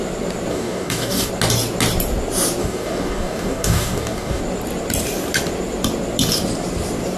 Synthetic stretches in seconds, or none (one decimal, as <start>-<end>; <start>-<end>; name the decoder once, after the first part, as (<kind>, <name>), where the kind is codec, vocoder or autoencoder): 0.5-1.3 (codec, DAC); 2.6-4.4